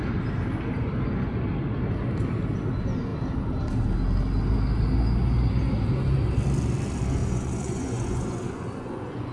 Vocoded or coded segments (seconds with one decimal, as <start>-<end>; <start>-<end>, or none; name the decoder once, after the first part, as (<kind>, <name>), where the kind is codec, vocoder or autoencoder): 7.2-9.3 (vocoder, Vocos)